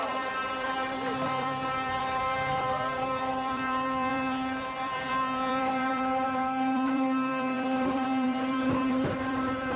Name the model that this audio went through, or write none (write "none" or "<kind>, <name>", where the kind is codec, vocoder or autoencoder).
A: vocoder, BigVGAN v2